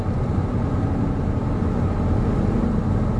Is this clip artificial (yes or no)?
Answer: no